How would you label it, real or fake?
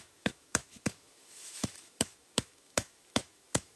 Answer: fake